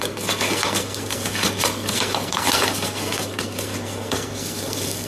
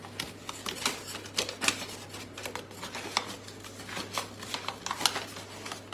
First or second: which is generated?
first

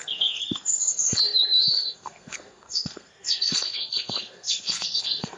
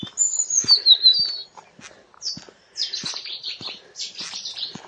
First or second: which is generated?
first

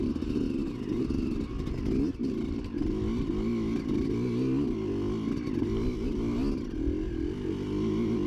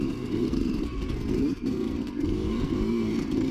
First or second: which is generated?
second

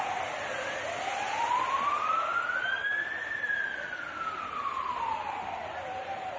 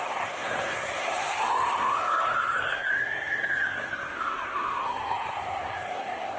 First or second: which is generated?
second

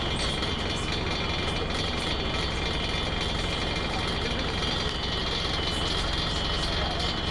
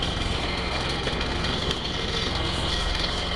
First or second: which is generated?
second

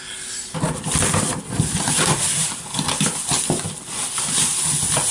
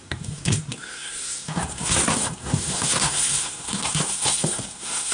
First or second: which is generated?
second